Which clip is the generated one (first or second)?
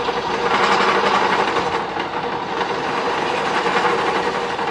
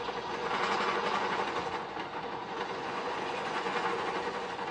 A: second